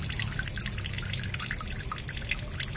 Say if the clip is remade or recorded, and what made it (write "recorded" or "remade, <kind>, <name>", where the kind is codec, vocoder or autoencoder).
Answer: recorded